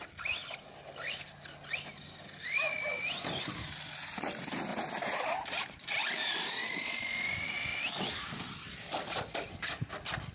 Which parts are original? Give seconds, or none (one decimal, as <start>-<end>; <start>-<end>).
0.0-4.7; 6.8-7.7; 9.9-10.3

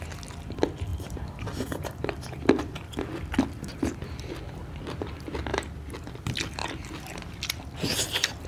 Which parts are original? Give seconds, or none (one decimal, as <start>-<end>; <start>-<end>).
0.0-0.9; 4.3-5.5; 6.1-8.5